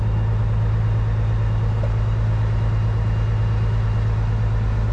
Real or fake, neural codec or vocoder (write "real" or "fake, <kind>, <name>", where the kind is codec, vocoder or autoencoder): real